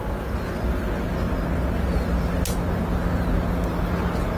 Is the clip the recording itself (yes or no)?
yes